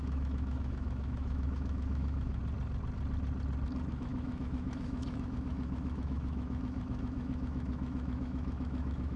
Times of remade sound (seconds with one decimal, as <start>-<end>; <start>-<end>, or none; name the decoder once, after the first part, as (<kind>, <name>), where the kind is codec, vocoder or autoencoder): 0.0-2.4 (autoencoder, DAC-VAE); 3.9-9.2